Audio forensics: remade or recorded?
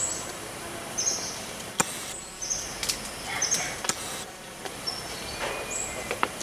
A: recorded